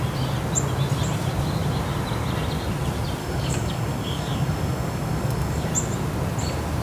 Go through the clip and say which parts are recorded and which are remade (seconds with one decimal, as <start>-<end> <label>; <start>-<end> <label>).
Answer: 0.0-3.2 recorded; 3.2-5.7 remade; 5.7-6.8 recorded